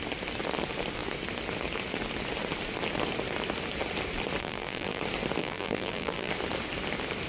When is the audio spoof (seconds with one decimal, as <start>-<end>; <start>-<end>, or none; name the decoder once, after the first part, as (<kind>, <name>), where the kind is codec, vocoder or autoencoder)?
4.4-5.0 (vocoder, BigVGAN v2); 5.4-6.3